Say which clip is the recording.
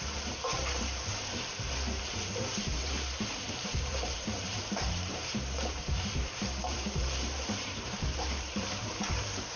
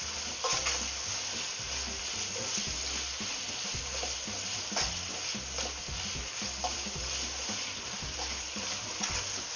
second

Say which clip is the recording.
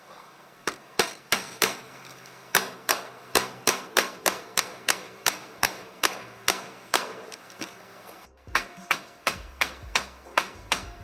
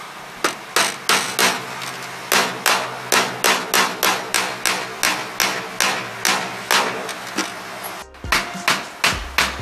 second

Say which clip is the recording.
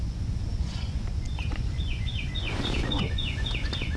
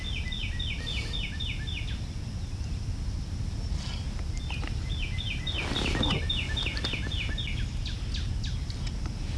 second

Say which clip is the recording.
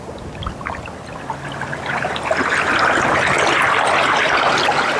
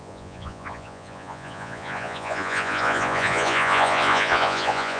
first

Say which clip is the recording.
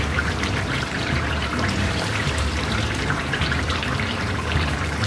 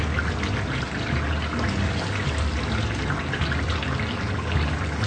second